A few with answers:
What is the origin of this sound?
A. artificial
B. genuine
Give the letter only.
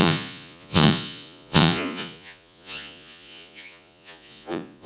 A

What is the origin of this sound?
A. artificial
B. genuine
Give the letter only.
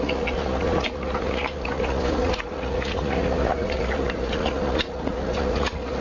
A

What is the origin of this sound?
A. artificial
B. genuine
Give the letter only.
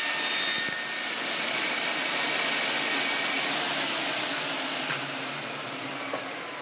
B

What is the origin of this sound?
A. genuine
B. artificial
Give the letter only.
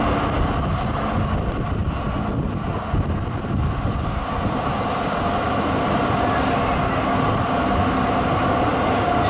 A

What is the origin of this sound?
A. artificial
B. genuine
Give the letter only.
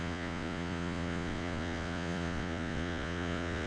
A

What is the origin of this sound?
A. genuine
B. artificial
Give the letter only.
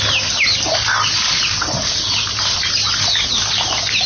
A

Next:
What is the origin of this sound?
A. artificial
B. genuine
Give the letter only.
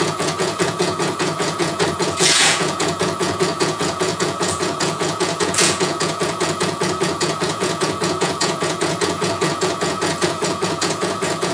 A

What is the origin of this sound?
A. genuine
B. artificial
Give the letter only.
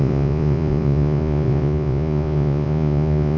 B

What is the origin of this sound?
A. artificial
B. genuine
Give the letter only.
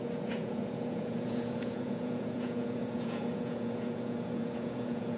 A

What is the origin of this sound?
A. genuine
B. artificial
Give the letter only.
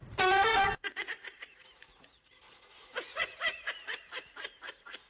B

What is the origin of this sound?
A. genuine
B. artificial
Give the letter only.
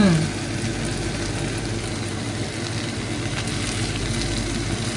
A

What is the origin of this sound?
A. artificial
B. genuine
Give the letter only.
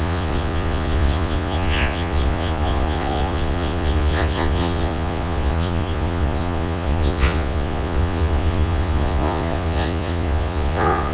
A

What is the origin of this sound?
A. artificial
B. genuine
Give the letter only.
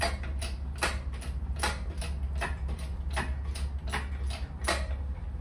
B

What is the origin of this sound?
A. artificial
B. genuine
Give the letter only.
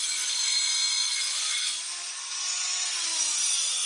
A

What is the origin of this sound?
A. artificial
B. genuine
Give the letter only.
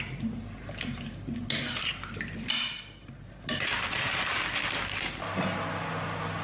B